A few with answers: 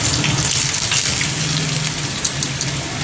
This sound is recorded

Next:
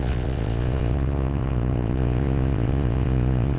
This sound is remade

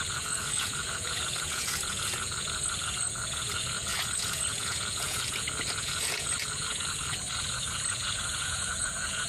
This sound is remade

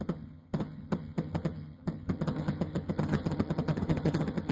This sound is remade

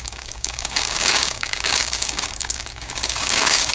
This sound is remade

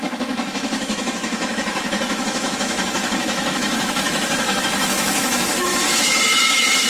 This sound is remade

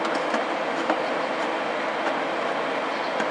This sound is recorded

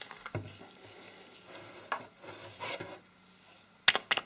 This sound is recorded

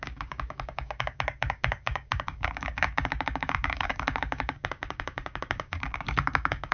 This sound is remade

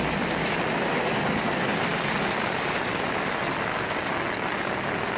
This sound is recorded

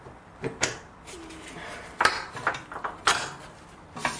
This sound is recorded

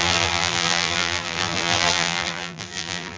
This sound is remade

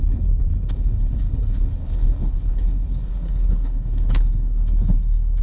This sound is remade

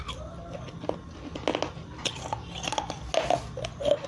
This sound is recorded